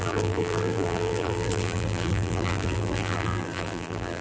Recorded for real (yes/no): no